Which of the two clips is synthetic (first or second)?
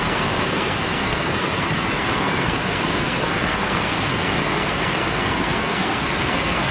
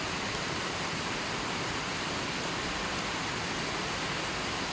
first